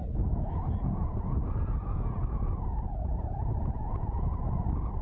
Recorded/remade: remade